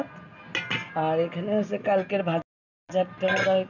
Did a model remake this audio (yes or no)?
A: no